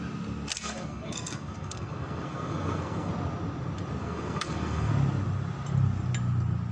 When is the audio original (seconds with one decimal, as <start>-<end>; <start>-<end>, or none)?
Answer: 0.0-0.5; 3.1-4.0; 4.9-6.7